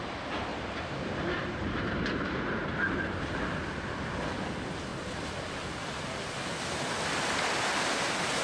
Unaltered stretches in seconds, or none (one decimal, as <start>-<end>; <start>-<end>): 0.0-0.5; 2.7-8.4